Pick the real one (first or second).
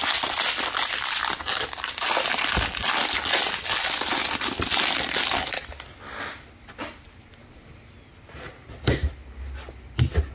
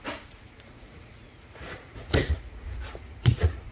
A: first